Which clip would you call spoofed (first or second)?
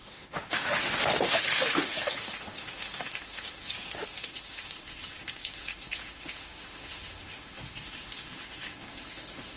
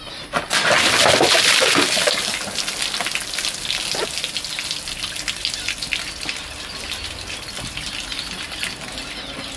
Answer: first